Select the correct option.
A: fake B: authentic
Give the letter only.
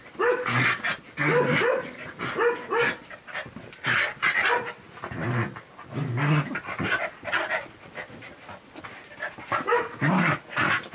B